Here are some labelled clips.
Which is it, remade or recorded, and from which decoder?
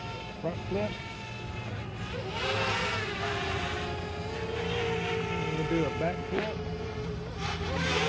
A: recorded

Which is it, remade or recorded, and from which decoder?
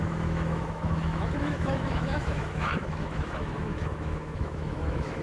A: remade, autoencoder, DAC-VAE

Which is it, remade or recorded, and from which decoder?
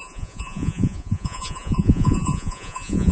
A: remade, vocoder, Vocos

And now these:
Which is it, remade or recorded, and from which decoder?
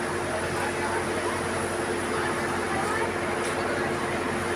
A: recorded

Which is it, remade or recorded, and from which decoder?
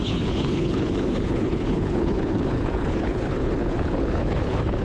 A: remade, codec, HILCodec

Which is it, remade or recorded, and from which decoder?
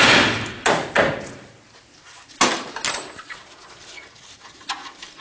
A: recorded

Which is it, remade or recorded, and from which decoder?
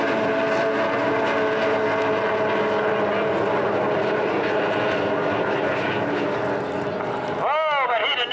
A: recorded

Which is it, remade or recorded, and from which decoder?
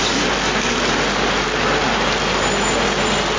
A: recorded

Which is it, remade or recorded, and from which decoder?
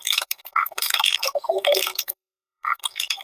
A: remade, codec, SNAC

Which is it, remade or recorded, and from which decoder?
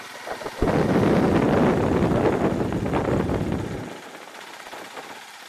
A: recorded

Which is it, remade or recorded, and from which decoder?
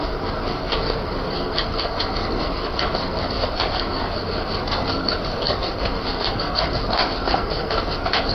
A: remade, codec, SNAC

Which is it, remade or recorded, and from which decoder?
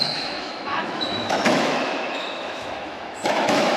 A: remade, autoencoder, DAC-VAE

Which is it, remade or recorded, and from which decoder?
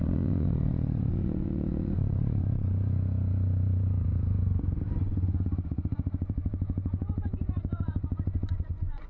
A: remade, vocoder, Vocos